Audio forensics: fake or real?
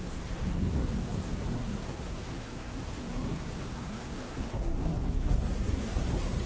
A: fake